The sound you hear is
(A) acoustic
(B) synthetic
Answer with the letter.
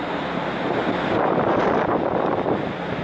A